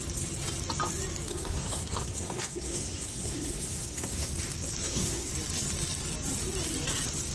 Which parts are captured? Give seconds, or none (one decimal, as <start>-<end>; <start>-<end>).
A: 0.0-1.3; 4.3-4.8; 5.3-7.3